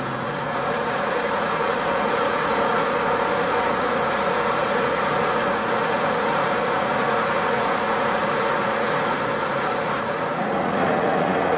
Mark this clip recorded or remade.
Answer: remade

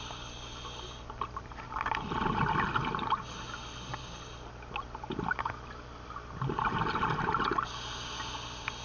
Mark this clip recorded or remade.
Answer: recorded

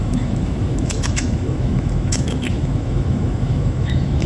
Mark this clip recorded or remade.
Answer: remade